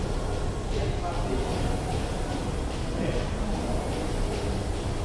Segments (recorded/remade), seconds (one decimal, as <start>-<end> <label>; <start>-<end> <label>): 0.0-0.8 recorded; 0.8-3.8 remade; 3.8-5.0 recorded